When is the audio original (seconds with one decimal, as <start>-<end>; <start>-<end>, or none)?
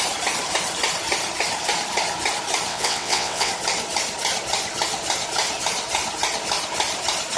0.0-2.7; 3.5-7.4